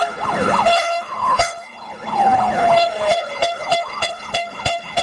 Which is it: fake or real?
fake